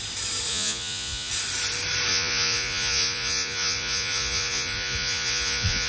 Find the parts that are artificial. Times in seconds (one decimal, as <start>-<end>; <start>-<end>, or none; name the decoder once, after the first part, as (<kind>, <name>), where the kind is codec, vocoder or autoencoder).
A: 0.5-1.3 (vocoder, Vocos); 2.1-5.9